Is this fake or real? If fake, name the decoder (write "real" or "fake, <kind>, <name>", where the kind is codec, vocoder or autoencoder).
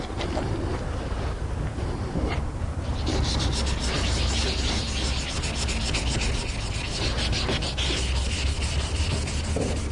real